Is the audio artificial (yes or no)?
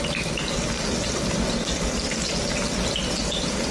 yes